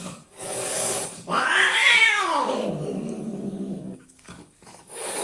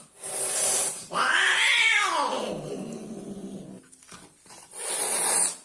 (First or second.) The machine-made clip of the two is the first